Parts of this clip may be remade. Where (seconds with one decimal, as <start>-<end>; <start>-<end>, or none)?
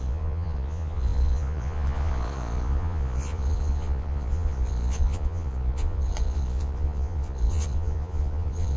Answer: 0.0-8.8